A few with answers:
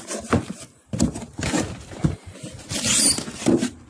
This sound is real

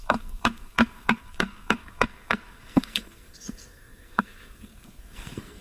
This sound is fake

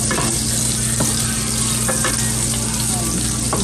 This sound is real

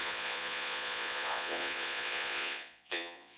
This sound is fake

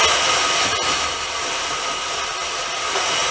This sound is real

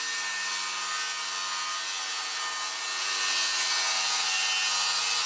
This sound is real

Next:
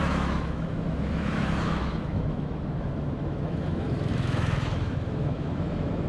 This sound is fake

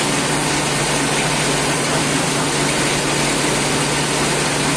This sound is real